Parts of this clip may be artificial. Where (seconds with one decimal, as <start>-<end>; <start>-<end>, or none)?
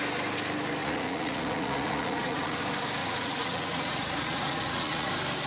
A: 0.8-2.6; 3.0-5.1